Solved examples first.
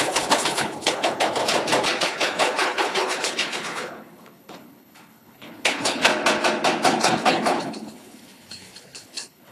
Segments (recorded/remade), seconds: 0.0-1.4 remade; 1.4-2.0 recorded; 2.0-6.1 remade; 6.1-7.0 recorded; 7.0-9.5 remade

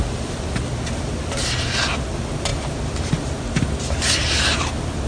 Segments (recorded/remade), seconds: 0.0-5.1 recorded